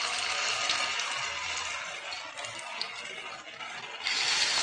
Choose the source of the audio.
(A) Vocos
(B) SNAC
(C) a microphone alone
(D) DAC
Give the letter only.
C